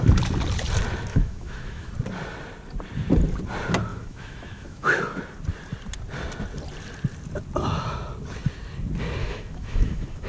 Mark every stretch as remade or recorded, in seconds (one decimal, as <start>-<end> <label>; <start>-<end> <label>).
0.0-1.1 recorded; 1.1-1.9 remade; 1.9-3.9 recorded; 3.9-5.0 remade; 5.0-9.2 recorded; 9.2-10.3 remade

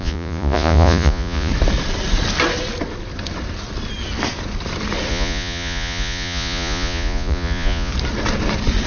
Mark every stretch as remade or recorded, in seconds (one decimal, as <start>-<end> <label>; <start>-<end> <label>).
0.0-1.5 remade; 1.5-5.1 recorded; 5.1-7.9 remade; 7.9-8.9 recorded

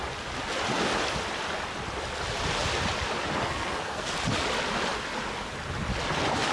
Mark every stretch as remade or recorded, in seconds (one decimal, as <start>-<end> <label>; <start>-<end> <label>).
0.0-3.4 recorded; 3.4-4.1 remade; 4.1-6.5 recorded

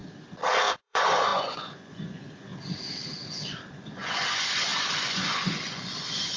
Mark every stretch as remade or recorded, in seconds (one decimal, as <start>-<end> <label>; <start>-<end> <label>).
0.0-0.8 recorded; 0.8-2.5 remade; 2.5-3.7 recorded; 3.7-6.4 remade

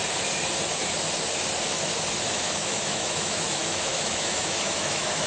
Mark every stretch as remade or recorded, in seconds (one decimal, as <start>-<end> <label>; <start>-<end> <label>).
0.0-2.2 recorded; 2.2-5.3 remade